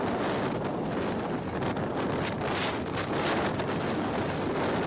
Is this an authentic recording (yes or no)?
yes